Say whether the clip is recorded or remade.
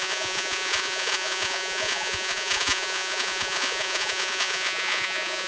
remade